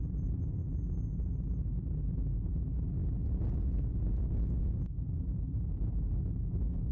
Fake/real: real